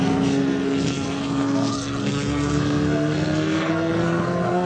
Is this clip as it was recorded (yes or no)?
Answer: no